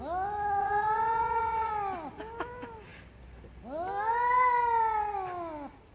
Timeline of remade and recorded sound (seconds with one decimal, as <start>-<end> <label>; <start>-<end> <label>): 0.0-0.6 recorded; 0.6-1.7 remade; 1.7-5.9 recorded